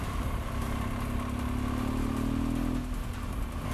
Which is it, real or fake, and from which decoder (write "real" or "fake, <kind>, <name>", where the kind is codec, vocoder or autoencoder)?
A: real